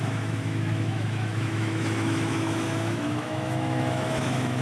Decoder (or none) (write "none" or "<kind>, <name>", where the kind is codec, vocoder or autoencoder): autoencoder, DAC-VAE